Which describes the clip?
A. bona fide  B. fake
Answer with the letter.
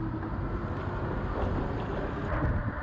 A